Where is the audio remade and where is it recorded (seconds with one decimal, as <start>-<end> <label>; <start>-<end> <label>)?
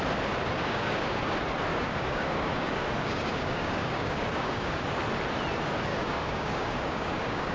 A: 0.0-0.6 recorded; 0.6-1.2 remade; 1.2-1.7 recorded; 1.7-4.8 remade; 4.8-5.9 recorded; 5.9-7.5 remade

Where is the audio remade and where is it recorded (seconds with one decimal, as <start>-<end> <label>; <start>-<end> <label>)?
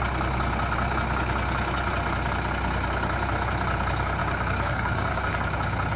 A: 0.0-4.2 recorded; 4.2-5.3 remade; 5.3-6.0 recorded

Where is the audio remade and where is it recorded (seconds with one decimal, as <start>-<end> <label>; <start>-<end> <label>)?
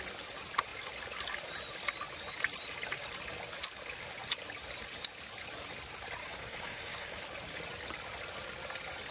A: 0.0-6.2 recorded; 6.2-7.2 remade; 7.2-9.1 recorded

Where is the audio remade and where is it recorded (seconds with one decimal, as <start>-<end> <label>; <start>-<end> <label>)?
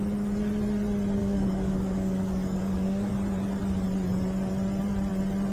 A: 0.0-1.2 recorded; 1.2-3.1 remade; 3.1-5.5 recorded